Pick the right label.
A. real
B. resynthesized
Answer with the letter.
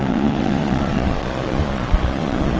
B